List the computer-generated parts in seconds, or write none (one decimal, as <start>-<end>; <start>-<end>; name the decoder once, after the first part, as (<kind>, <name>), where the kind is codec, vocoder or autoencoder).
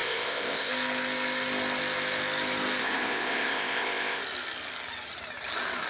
0.0-0.7 (codec, ZipCodec); 2.8-4.2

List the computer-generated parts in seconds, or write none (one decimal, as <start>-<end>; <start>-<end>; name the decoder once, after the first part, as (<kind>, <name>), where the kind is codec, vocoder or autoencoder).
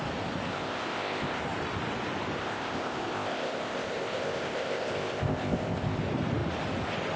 0.5-1.4 (codec, ZipCodec); 2.4-6.0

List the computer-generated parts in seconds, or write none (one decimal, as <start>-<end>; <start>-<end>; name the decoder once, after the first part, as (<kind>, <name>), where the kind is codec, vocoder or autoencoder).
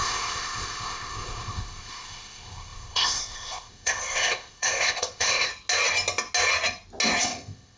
0.0-5.5 (codec, ZipCodec); 7.2-7.8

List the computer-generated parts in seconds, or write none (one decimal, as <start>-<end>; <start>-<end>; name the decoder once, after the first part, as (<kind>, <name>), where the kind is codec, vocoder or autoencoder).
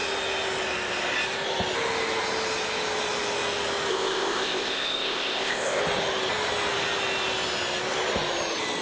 3.9-5.8 (codec, ZipCodec)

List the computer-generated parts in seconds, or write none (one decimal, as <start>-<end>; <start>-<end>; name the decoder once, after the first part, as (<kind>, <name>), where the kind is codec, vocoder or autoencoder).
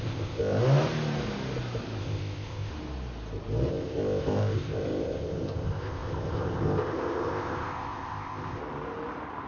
0.0-0.6 (codec, ZipCodec); 2.0-2.7; 3.7-8.6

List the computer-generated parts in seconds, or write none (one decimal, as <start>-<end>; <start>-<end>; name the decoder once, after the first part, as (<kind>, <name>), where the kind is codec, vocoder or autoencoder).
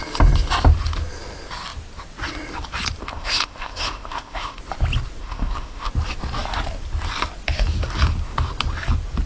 3.0-4.6 (codec, ZipCodec); 5.2-5.9